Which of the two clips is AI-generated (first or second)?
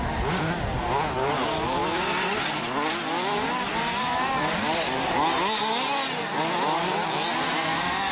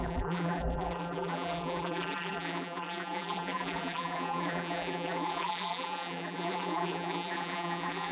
second